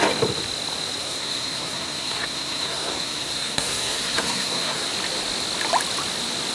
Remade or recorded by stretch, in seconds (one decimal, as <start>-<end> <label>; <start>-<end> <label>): 0.0-1.0 recorded; 1.0-4.9 remade; 4.9-6.5 recorded

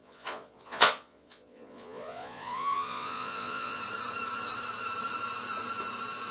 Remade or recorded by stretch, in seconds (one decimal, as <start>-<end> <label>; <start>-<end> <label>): 0.0-3.8 remade; 3.8-6.3 recorded

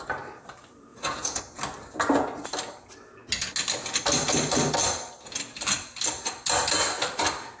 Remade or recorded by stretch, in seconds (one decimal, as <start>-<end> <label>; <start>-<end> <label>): 0.0-0.9 recorded; 0.9-1.4 remade; 1.4-7.6 recorded

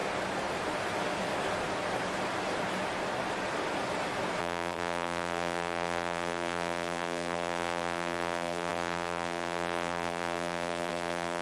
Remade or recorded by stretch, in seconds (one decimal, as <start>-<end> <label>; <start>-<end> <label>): 0.0-4.4 recorded; 4.4-11.4 remade

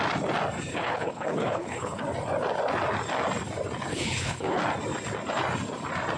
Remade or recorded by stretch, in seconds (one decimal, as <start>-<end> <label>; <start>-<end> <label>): 0.0-0.7 recorded; 0.7-2.0 remade; 2.0-3.9 recorded; 3.9-4.6 remade; 4.6-6.2 recorded

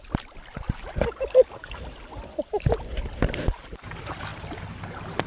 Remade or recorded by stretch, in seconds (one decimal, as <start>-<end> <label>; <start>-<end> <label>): 0.0-5.3 recorded

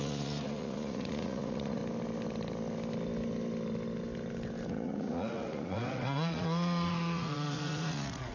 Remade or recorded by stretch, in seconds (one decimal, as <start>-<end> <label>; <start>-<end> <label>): 0.0-1.8 remade; 1.8-4.7 recorded; 4.7-8.3 remade